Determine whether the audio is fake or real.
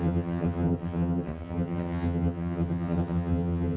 fake